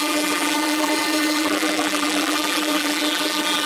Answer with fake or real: fake